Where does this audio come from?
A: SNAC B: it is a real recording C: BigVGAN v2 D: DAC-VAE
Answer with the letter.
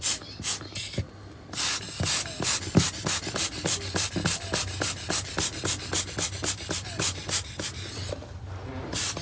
B